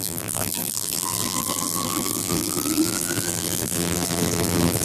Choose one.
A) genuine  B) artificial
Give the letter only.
B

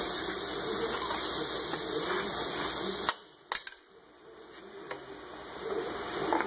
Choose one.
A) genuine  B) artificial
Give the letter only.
A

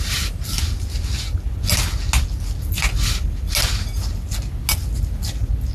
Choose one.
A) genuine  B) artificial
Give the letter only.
A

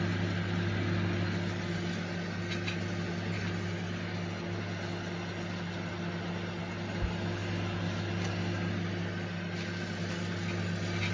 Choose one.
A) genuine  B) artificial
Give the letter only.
A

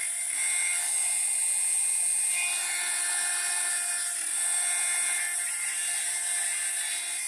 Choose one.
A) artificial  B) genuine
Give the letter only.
B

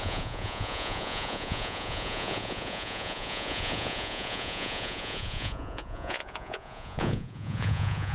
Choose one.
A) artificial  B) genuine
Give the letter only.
A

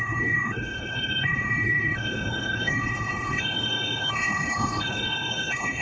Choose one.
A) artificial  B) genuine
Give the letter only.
A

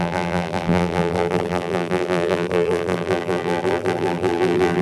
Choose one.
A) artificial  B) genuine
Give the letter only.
A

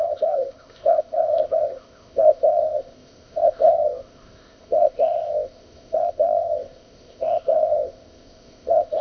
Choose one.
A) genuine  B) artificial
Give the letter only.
B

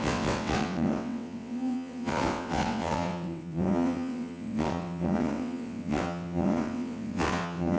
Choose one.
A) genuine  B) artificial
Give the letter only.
B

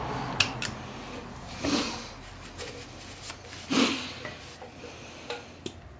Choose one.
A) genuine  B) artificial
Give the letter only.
A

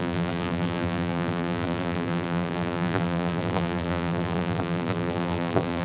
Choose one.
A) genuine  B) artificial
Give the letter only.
B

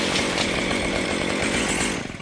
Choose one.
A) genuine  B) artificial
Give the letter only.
B